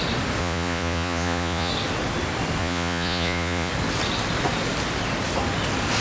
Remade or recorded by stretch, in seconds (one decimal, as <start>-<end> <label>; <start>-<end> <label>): 0.0-0.4 recorded; 0.4-1.7 remade; 1.7-2.6 recorded; 2.6-3.7 remade; 3.7-6.0 recorded